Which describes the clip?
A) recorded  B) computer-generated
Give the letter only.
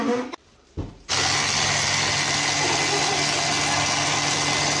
A